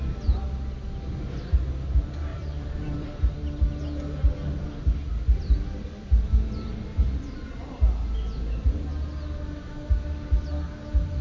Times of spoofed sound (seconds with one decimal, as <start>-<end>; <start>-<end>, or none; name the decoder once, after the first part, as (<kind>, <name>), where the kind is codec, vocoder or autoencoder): 2.3-3.6 (vocoder, BigVGAN v2)